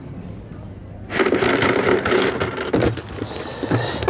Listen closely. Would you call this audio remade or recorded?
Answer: recorded